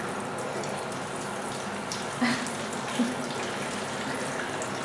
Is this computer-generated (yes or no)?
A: no